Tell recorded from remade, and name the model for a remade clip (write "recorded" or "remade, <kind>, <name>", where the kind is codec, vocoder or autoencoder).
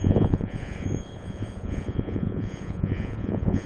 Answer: remade, vocoder, Vocos